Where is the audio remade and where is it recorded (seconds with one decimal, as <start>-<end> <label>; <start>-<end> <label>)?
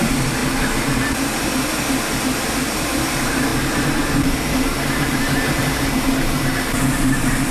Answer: 0.0-3.5 remade; 3.5-4.0 recorded; 4.0-7.5 remade